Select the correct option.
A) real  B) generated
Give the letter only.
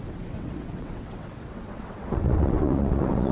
B